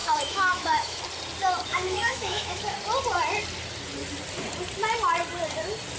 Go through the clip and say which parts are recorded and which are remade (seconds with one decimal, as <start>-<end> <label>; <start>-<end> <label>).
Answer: 0.0-1.0 remade; 1.0-1.7 recorded; 1.7-2.6 remade; 2.6-6.0 recorded